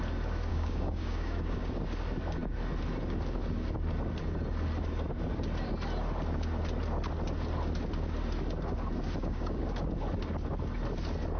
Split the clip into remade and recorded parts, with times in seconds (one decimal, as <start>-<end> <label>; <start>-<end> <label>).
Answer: 0.0-0.5 recorded; 0.5-1.7 remade; 1.7-9.2 recorded; 9.2-9.8 remade; 9.8-11.4 recorded